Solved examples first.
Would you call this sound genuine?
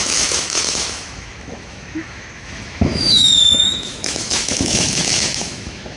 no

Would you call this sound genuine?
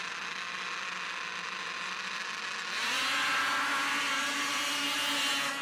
yes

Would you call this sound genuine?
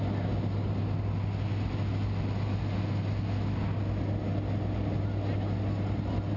yes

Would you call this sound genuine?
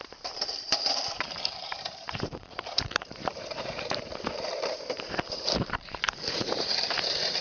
no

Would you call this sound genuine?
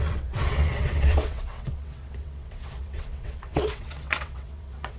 no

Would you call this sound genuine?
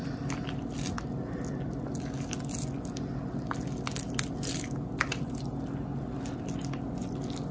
yes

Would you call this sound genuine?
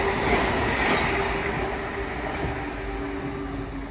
yes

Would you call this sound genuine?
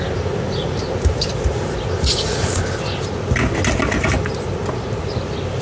yes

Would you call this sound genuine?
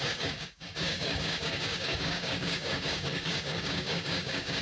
no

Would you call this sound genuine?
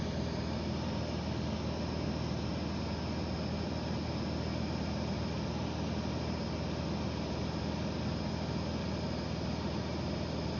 yes